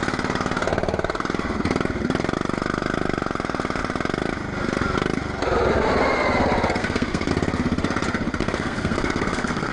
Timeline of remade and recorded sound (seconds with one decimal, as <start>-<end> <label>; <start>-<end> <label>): 0.0-6.8 recorded; 6.8-7.3 remade; 7.3-8.4 recorded; 8.4-9.7 remade